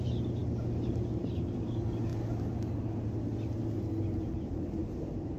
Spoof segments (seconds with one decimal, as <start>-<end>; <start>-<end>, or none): 4.8-5.4